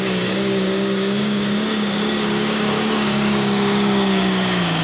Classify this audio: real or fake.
fake